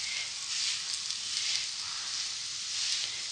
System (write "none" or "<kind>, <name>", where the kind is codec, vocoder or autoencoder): none